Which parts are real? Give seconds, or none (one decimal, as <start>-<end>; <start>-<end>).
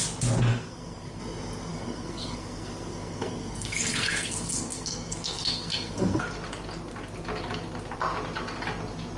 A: 0.0-0.5; 1.2-1.7; 6.2-9.2